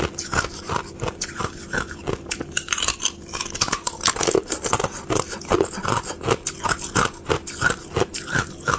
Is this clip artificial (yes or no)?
no